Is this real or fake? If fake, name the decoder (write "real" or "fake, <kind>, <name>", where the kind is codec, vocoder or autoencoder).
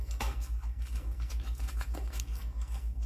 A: fake, codec, SNAC